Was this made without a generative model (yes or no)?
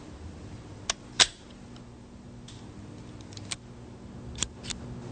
yes